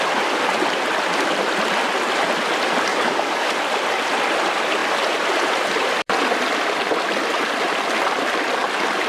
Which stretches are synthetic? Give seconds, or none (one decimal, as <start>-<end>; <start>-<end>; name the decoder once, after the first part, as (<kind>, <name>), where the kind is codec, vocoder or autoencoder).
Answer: 2.9-3.6 (codec, DAC)